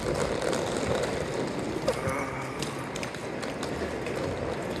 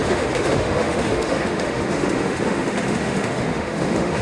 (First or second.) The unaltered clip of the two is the first